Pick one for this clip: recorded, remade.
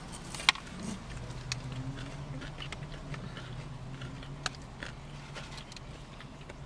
recorded